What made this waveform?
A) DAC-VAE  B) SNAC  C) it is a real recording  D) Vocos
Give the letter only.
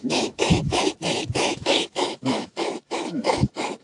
A